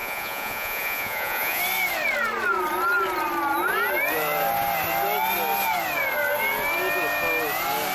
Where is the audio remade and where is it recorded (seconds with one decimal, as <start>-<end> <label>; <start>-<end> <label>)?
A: 0.0-1.6 remade; 1.6-7.9 recorded